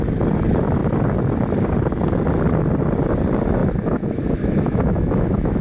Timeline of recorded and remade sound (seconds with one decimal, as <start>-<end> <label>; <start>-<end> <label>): 0.0-3.6 recorded; 3.6-5.6 remade